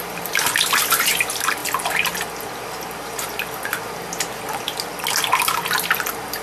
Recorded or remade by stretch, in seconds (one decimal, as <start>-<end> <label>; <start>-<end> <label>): 0.0-6.4 recorded